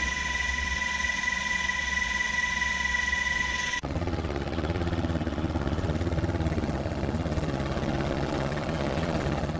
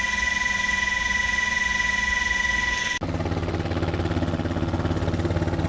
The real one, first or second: second